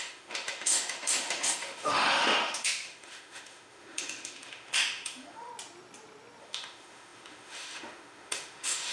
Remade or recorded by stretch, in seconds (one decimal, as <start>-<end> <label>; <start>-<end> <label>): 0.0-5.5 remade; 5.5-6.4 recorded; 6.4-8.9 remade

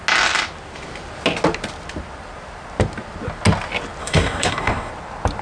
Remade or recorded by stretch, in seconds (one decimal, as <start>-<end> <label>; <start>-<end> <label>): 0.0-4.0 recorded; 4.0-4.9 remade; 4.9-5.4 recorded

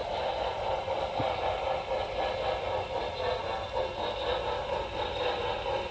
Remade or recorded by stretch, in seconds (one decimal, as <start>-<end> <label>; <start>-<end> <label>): 0.0-5.9 recorded